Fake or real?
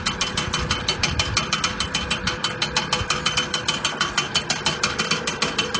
real